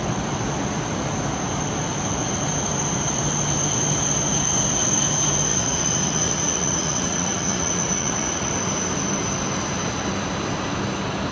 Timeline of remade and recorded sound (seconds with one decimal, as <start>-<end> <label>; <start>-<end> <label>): 0.0-5.5 recorded; 5.5-8.5 remade; 8.5-11.3 recorded